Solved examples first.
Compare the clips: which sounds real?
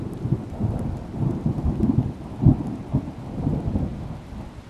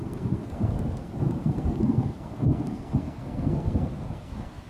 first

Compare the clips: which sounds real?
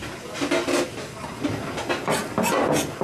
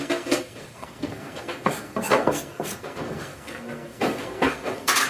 first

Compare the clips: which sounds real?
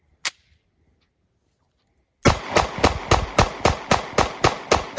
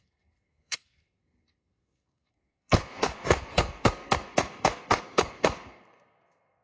first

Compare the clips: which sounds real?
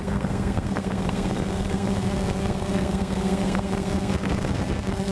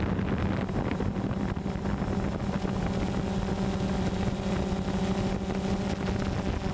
second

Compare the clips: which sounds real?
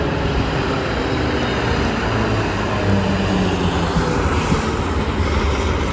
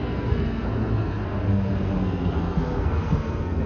first